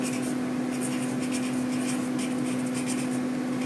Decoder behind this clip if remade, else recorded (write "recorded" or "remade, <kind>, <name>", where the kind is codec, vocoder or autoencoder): recorded